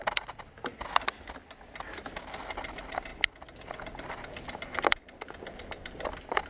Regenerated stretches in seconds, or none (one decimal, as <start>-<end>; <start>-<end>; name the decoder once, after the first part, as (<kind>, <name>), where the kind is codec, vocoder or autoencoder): none